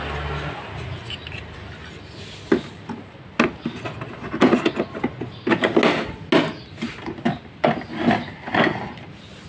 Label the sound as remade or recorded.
recorded